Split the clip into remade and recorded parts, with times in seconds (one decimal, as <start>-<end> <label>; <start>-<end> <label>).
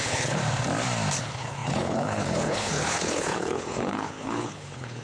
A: 0.0-0.4 remade; 0.4-1.2 recorded; 1.2-5.0 remade